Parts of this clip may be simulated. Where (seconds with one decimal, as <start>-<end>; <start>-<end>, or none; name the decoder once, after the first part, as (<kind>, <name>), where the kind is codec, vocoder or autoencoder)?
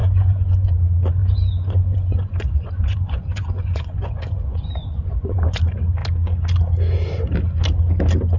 0.0-0.7 (vocoder, Vocos); 1.2-5.6